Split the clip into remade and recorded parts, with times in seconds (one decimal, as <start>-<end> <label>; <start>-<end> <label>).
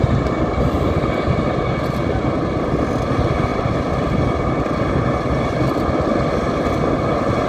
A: 0.0-3.5 recorded; 3.5-4.1 remade; 4.1-7.5 recorded